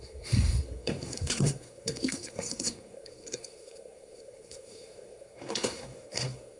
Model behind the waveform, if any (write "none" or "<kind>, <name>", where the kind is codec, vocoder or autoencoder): codec, SNAC